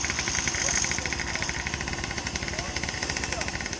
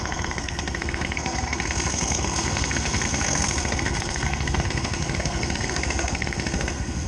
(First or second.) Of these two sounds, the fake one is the second